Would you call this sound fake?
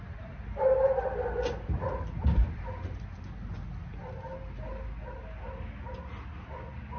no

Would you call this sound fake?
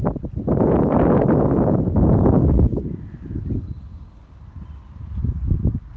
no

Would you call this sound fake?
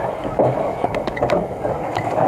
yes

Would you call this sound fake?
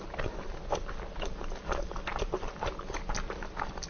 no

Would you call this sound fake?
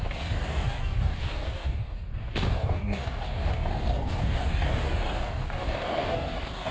yes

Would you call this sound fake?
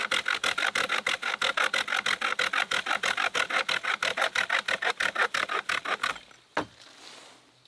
no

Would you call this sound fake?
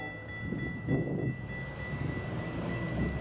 no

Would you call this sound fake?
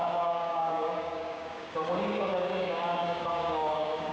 yes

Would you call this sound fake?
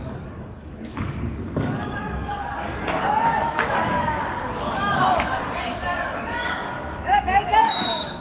yes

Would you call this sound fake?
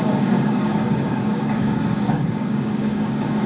yes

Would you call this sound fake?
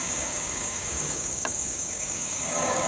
yes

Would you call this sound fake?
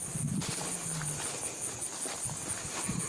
no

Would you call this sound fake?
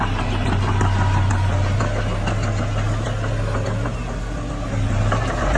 no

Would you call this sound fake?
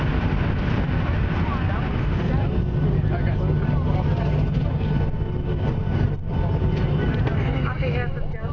no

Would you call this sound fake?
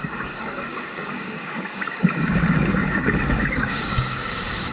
yes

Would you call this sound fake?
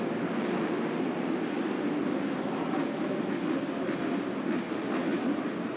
no